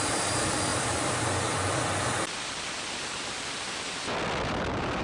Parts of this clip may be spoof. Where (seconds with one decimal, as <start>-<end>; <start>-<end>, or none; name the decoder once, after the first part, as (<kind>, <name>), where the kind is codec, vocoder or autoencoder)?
0.7-3.7 (vocoder, BigVGAN v2)